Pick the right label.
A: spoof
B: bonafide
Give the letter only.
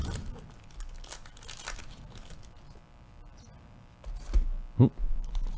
B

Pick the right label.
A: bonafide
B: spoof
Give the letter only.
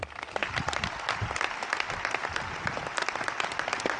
A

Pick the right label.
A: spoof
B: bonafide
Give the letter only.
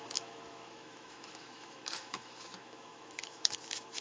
A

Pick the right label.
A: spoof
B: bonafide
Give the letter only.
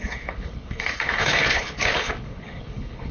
A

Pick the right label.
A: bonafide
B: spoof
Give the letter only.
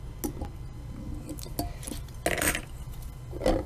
A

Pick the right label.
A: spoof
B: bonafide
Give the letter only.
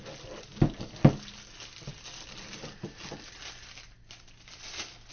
B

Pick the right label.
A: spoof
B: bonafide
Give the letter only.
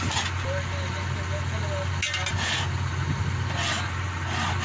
B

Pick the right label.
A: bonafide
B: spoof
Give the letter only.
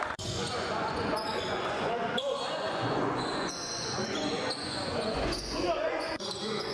B